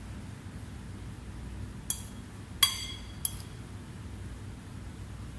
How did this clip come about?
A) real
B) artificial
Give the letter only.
A